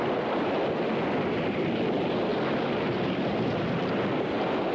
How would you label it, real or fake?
real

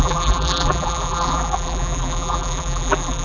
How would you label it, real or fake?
fake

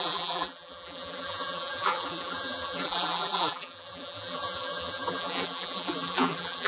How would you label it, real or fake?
fake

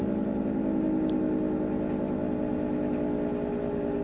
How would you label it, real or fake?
real